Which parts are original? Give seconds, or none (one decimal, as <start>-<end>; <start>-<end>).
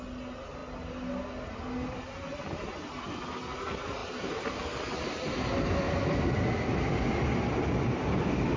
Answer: 0.0-8.6